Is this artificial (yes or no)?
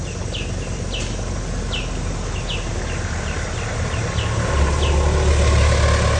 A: no